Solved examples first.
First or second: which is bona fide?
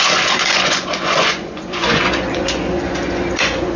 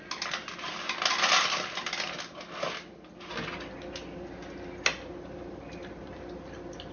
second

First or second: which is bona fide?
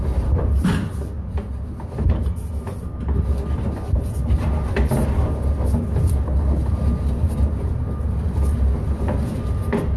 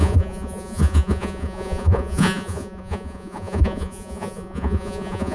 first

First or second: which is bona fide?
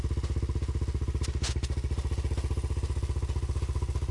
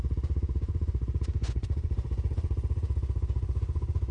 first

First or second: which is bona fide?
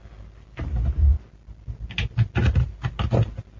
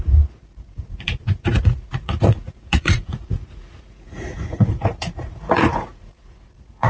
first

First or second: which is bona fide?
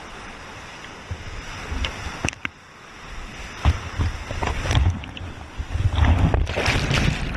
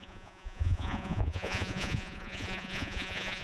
first